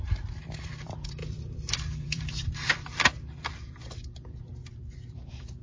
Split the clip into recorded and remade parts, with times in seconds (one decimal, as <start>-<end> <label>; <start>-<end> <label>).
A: 0.0-5.6 remade